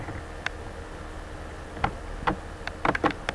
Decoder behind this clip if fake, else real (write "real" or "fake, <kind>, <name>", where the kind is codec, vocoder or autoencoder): real